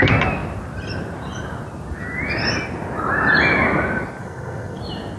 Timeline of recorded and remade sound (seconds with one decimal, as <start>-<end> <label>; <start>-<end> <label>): 0.0-4.2 recorded; 4.2-4.8 remade; 4.8-5.2 recorded